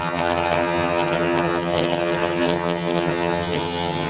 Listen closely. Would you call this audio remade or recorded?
remade